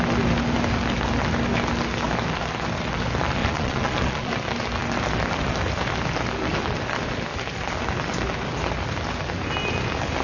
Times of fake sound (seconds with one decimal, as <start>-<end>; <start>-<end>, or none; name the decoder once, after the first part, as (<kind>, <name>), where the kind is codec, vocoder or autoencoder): 3.4-4.3 (vocoder, Vocos)